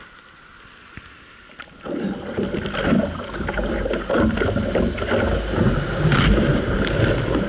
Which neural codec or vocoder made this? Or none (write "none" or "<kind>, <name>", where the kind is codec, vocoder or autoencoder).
none